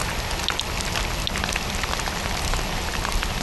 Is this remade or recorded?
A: recorded